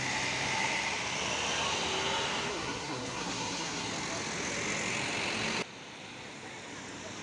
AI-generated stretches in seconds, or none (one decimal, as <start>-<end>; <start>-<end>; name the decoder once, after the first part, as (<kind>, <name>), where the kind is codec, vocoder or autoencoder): 2.5-3.9 (codec, SNAC)